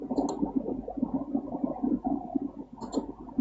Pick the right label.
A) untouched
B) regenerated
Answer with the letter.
A